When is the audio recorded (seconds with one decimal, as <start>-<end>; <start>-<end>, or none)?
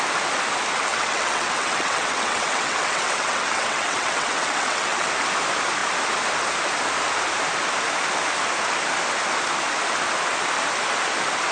0.0-0.9; 5.1-11.5